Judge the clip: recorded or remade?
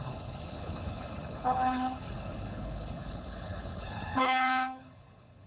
remade